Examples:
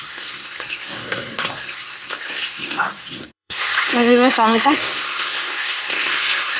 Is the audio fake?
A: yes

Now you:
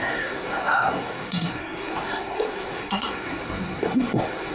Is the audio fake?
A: yes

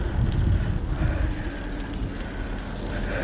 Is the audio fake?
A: no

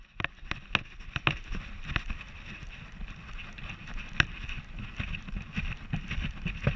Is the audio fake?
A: no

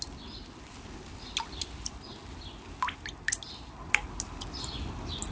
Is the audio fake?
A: no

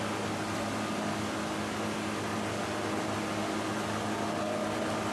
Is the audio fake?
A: no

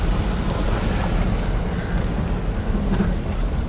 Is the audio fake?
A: no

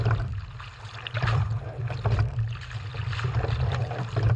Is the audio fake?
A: no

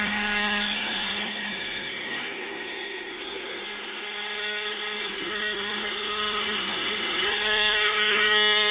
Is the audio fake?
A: yes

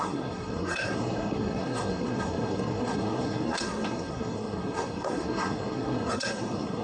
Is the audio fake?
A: yes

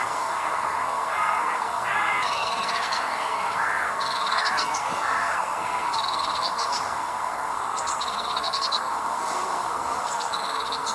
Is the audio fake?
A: yes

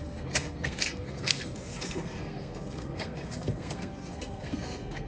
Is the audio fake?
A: yes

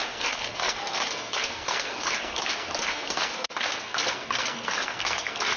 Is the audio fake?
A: yes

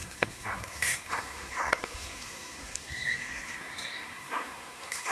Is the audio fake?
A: yes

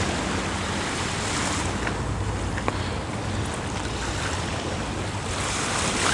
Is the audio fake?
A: no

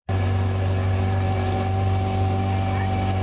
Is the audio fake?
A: no